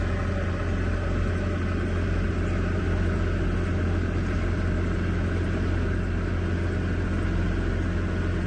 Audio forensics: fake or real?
real